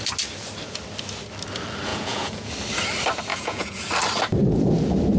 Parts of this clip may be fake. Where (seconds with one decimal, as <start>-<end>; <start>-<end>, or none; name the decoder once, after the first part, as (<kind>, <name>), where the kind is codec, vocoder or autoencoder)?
1.9-2.5 (vocoder, Vocos); 3.3-3.9

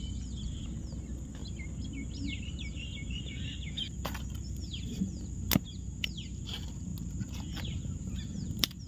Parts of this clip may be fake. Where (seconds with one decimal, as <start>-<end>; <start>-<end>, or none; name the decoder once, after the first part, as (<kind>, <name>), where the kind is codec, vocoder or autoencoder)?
none